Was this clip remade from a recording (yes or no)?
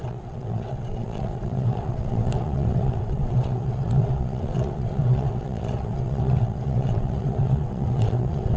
yes